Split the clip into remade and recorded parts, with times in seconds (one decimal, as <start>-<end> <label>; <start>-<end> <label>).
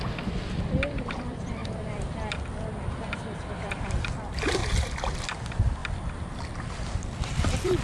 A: 0.0-4.6 remade; 4.6-5.2 recorded; 5.2-5.8 remade; 5.8-6.4 recorded; 6.4-7.8 remade